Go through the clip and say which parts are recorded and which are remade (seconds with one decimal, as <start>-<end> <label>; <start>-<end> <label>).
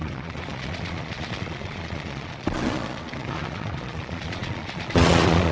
0.0-5.5 remade